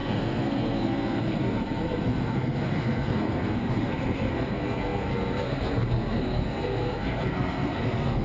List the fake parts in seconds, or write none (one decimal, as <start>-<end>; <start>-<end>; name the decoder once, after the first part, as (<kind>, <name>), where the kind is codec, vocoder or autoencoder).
0.0-8.2 (codec, SNAC)

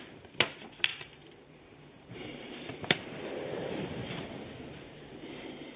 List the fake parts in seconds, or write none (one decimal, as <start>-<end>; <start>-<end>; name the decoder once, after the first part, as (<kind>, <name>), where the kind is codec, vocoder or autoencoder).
0.9-4.1 (vocoder, BigVGAN v2)

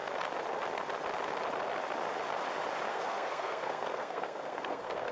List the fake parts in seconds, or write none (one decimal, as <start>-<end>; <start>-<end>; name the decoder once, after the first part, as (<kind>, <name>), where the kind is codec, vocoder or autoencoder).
2.9-5.1 (codec, SNAC)

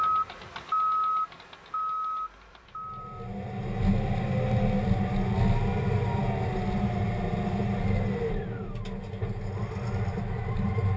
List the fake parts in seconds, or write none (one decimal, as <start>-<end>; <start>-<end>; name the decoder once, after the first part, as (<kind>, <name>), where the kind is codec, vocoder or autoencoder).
none

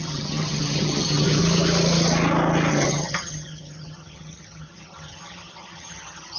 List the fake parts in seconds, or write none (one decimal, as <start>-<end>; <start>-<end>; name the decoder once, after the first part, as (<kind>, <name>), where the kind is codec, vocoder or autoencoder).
0.0-1.4 (vocoder, HiFi-GAN); 2.7-6.4